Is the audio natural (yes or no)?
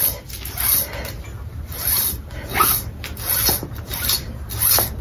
yes